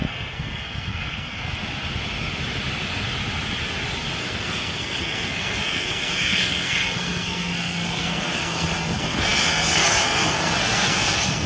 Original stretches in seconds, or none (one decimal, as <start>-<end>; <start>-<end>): 1.6-4.2